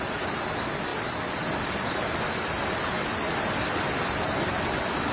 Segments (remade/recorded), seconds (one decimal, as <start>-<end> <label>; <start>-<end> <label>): 0.0-5.1 recorded